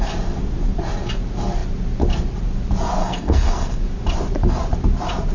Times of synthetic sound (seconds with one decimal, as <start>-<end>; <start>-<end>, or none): 3.0-3.8